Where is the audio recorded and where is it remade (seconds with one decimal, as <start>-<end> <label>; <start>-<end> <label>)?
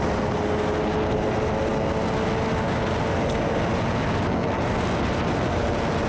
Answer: 0.0-6.1 recorded